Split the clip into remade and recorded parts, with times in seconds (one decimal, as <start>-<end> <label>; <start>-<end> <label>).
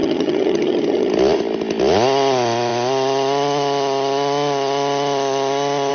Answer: 0.0-1.1 remade; 1.1-5.9 recorded